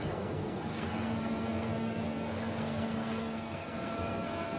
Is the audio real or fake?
fake